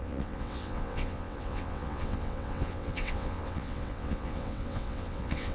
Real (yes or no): no